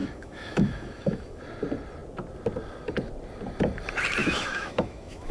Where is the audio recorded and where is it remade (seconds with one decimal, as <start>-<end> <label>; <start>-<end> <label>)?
0.0-1.4 remade; 1.4-4.2 recorded; 4.2-5.3 remade